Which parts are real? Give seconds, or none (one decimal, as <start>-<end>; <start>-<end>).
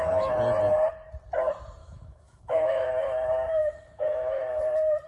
0.0-1.8; 2.9-3.6; 4.5-5.1